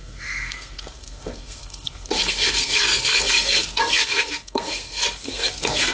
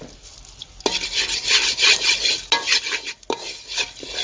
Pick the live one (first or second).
second